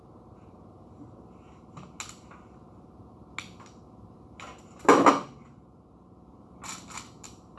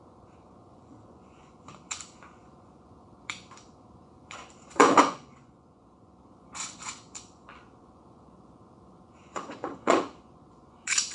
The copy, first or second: second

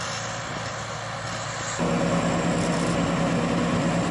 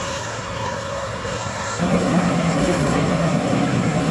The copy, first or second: second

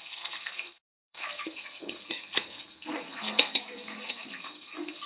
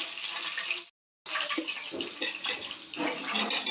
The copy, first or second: first